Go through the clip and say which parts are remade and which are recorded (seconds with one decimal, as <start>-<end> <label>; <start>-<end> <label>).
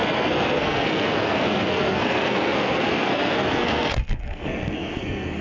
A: 0.0-5.4 remade